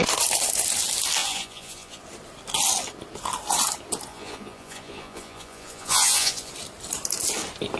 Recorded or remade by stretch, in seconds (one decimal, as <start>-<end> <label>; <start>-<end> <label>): 0.0-1.2 recorded; 1.2-2.0 remade; 2.0-4.1 recorded; 4.1-6.5 remade; 6.5-7.8 recorded